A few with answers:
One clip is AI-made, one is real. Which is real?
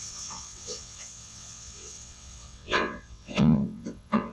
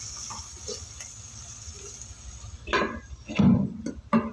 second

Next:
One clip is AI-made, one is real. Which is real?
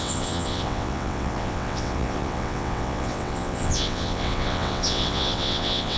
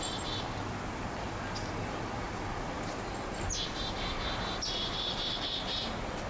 second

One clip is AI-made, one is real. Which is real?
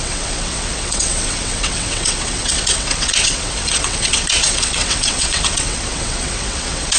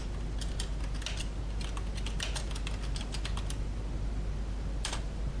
second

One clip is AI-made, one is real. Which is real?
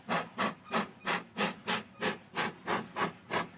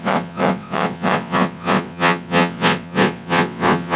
first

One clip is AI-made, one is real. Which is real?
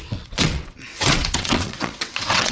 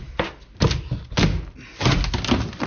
second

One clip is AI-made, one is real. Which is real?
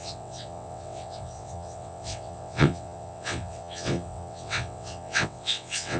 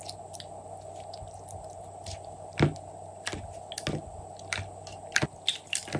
second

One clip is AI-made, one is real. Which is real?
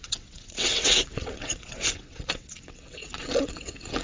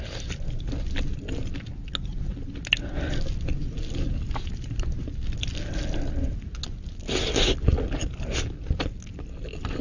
second